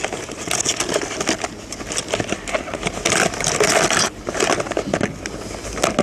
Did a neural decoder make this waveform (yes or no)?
no